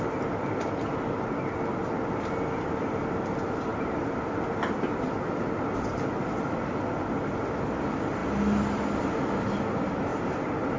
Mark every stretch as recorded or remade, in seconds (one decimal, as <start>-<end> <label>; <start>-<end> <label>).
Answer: 0.0-10.8 recorded